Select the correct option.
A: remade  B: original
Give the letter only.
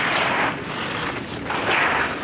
B